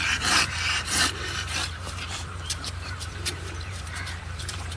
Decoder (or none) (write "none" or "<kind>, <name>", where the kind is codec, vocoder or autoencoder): vocoder, BigVGAN v2